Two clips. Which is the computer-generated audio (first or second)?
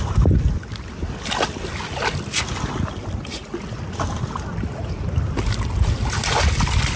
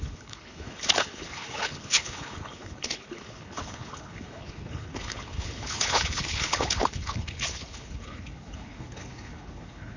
second